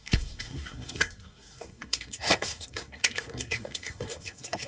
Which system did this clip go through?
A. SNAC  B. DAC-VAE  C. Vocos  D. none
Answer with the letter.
A